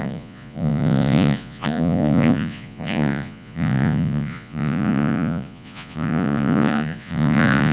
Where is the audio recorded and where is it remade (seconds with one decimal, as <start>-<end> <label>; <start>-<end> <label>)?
0.0-7.7 remade